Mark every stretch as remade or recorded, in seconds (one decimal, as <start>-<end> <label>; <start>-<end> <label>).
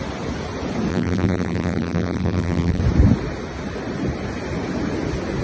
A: 0.0-0.9 recorded; 0.9-2.8 remade; 2.8-5.4 recorded